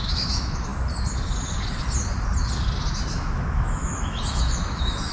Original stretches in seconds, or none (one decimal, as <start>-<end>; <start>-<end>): 0.7-3.1